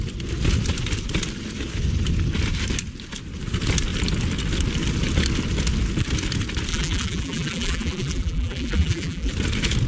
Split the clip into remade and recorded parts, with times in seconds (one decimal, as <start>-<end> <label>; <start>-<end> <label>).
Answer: 0.0-6.7 recorded; 6.7-9.3 remade; 9.3-9.9 recorded